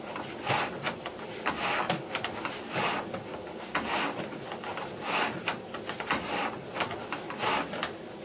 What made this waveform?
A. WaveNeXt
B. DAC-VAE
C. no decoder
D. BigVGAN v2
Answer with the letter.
C